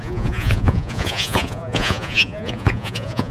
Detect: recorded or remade remade